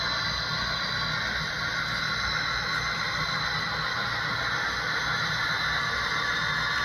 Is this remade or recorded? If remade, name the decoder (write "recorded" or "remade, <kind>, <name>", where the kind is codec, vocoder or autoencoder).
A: recorded